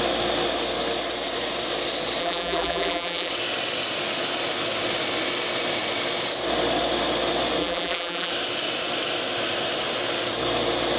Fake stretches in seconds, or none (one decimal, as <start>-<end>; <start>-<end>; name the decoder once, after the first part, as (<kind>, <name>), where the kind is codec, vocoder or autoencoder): 2.2-3.3 (vocoder, BigVGAN v2); 7.6-8.3

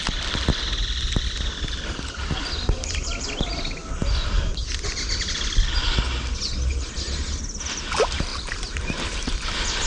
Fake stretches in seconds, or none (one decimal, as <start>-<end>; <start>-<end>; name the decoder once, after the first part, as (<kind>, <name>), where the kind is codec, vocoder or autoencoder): 8.3-9.3 (vocoder, BigVGAN v2)

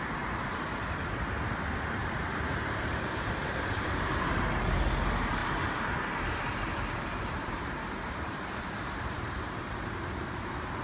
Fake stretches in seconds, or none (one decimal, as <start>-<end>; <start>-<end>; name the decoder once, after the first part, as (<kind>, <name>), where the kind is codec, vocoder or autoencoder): 2.0-4.3 (vocoder, BigVGAN v2); 5.4-10.4

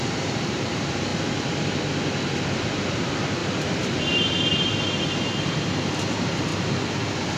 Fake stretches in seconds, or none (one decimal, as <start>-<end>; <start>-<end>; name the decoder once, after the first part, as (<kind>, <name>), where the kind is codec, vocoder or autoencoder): 0.0-1.1 (vocoder, BigVGAN v2); 2.6-3.4; 4.6-6.5